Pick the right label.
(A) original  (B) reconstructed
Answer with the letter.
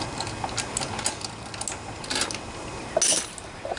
A